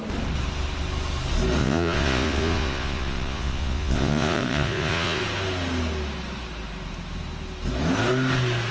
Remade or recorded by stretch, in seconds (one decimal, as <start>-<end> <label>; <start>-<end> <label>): 0.0-1.6 recorded; 1.6-5.2 remade; 5.2-8.7 recorded